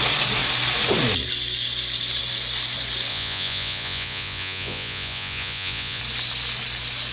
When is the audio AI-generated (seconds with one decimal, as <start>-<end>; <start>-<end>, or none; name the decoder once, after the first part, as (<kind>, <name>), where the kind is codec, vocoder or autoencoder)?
3.1-6.0 (vocoder, Vocos)